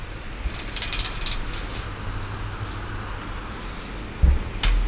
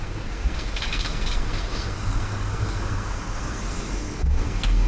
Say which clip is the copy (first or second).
second